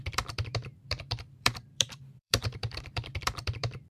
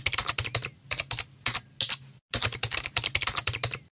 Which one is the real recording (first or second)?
second